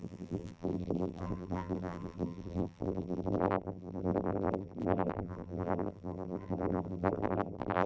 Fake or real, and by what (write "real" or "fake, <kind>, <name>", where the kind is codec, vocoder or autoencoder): fake, vocoder, BigVGAN v2